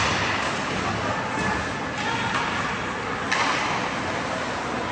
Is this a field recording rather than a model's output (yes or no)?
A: yes